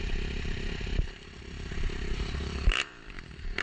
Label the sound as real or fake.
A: fake